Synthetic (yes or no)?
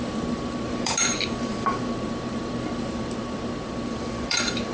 yes